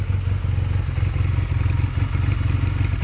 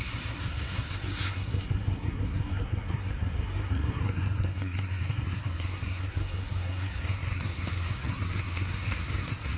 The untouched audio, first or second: first